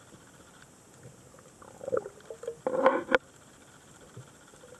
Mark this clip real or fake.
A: real